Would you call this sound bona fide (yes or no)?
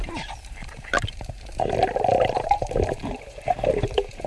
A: no